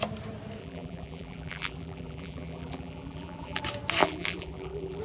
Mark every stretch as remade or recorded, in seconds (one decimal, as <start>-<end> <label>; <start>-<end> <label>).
0.0-0.6 recorded; 0.6-3.6 remade; 3.6-4.0 recorded; 4.0-5.0 remade